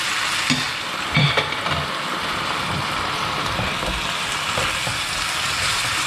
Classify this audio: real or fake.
real